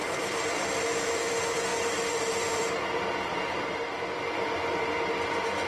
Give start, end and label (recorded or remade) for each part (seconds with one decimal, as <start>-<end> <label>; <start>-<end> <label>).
0.0-0.7 remade; 0.7-1.2 recorded; 1.2-5.7 remade